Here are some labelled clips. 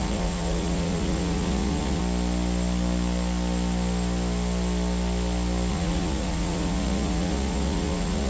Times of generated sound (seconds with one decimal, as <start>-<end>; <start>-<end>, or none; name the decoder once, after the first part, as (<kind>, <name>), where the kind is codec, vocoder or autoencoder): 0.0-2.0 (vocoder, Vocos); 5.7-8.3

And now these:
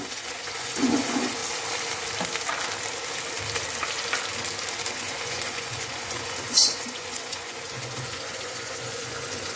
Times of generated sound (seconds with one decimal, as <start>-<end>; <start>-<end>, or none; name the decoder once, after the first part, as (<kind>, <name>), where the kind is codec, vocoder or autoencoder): 0.0-1.4 (vocoder, Vocos); 4.9-9.6

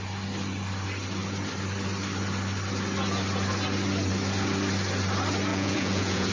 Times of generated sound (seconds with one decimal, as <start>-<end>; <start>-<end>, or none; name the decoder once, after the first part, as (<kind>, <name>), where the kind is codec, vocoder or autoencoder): 5.5-6.3 (vocoder, Vocos)

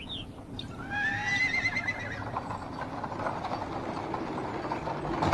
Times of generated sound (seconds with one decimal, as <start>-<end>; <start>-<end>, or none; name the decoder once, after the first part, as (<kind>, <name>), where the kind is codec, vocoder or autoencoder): none

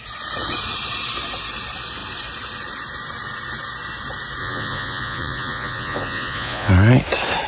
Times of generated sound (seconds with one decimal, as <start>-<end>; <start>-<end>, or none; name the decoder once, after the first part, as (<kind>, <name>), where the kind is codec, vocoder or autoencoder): 4.4-6.7 (vocoder, Vocos)

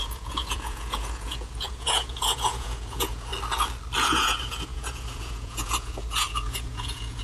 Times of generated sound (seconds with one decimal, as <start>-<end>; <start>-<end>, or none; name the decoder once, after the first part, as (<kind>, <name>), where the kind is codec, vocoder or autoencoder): 0.0-3.3 (vocoder, Vocos); 4.0-7.2

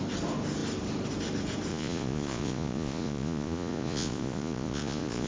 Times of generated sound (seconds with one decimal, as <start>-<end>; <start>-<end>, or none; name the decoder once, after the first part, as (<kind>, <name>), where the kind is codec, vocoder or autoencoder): 1.7-5.3 (vocoder, Vocos)